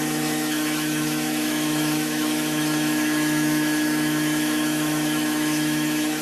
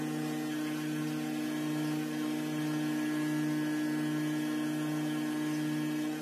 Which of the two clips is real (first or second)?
second